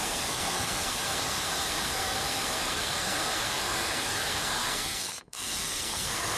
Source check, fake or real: fake